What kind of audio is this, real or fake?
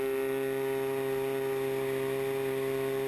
real